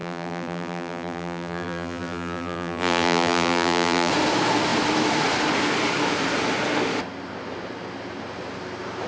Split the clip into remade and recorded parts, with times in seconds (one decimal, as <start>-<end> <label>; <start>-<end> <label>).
0.0-4.1 remade; 4.1-9.1 recorded